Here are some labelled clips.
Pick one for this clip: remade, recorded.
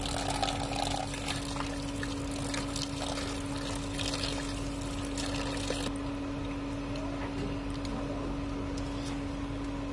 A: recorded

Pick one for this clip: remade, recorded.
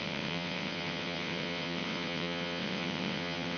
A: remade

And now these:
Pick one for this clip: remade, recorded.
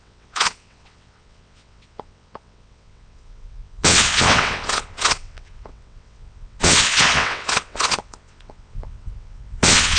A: remade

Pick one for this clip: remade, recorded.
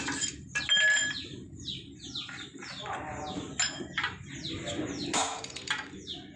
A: recorded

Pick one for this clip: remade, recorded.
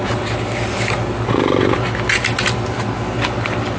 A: recorded